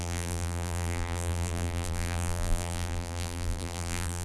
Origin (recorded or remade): remade